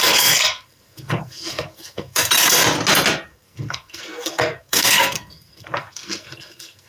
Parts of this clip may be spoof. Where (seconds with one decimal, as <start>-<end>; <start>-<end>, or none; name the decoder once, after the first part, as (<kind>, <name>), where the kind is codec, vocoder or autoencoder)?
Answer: 0.0-2.3 (codec, SNAC); 3.3-6.9